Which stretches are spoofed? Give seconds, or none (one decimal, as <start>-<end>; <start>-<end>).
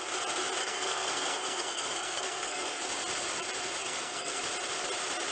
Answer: 0.6-2.8; 3.8-4.4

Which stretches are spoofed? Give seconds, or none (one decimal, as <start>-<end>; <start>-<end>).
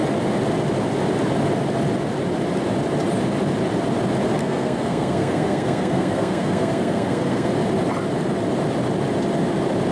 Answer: 4.4-7.5